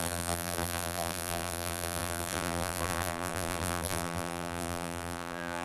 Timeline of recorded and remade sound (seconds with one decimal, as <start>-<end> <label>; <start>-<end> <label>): 0.0-5.6 remade